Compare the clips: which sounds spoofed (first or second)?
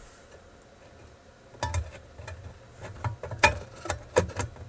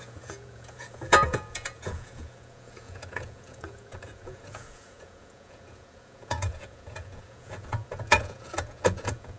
second